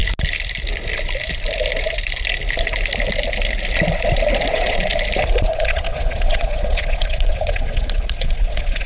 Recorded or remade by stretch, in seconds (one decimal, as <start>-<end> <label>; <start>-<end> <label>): 0.0-4.5 recorded; 4.5-4.9 remade; 4.9-5.4 recorded; 5.4-8.9 remade